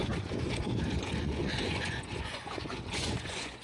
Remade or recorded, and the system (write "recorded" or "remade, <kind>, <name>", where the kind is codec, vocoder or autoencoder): remade, vocoder, Vocos